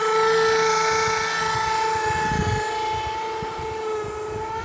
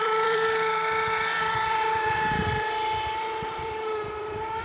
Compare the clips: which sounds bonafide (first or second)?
first